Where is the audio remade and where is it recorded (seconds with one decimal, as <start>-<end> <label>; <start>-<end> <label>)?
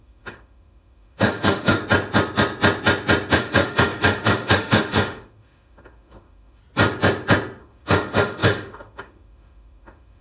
0.0-1.8 remade; 1.8-3.3 recorded; 3.3-6.6 remade; 6.6-7.6 recorded; 7.6-10.2 remade